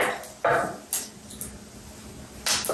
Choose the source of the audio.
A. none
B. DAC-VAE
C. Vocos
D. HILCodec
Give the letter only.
A